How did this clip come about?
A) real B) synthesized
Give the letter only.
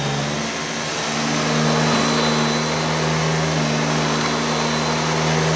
A